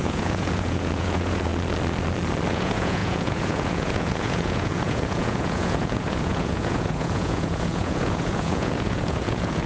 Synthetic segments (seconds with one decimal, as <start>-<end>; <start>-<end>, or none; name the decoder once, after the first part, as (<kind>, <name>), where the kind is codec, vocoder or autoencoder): 0.0-1.5 (vocoder, Vocos); 2.5-9.7

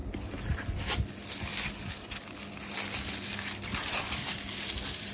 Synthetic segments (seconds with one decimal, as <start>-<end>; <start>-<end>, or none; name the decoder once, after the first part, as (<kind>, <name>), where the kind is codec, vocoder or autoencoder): none